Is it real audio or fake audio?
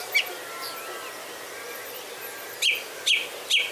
real